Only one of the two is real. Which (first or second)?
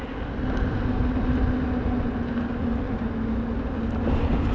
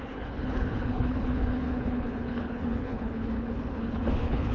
first